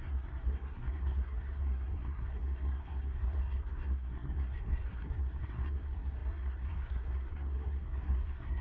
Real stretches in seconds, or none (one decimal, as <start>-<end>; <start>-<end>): none